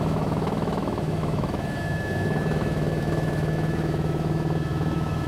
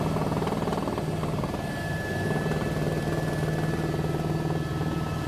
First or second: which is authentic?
second